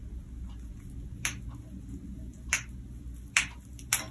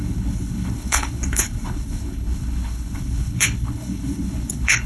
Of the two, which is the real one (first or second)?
first